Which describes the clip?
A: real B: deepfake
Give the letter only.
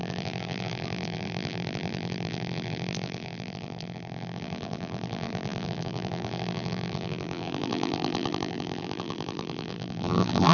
B